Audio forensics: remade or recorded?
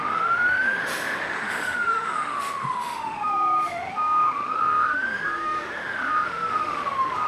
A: remade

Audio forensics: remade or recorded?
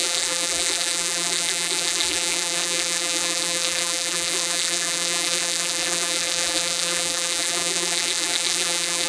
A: remade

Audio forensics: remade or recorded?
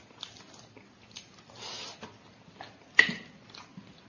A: recorded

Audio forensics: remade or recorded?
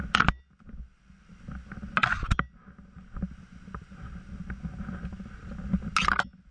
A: recorded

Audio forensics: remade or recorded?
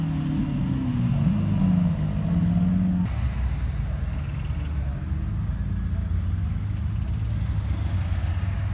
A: recorded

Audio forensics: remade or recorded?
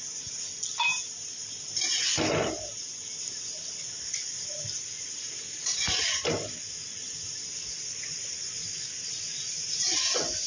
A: recorded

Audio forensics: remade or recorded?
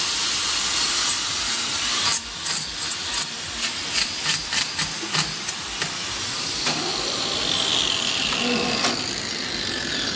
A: recorded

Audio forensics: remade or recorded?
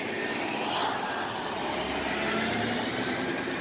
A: recorded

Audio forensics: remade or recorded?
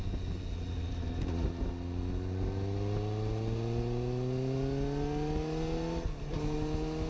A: recorded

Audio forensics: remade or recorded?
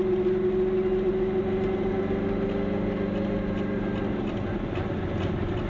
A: recorded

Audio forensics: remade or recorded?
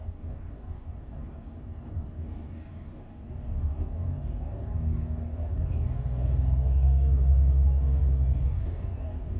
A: remade